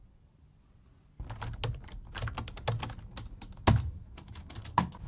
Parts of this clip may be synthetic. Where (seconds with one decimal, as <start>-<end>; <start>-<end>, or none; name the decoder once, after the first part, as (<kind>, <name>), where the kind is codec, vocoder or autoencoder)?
4.0-4.6 (autoencoder, DAC-VAE)